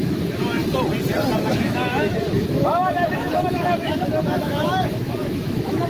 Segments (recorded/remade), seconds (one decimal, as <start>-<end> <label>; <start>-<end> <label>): 0.0-0.6 remade; 0.6-1.4 recorded; 1.4-5.9 remade